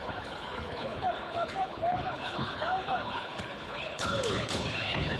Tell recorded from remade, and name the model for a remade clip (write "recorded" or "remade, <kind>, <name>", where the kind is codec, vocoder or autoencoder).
remade, codec, HILCodec